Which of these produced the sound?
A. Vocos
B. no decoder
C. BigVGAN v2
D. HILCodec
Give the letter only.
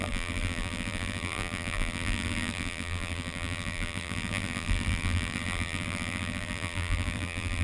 C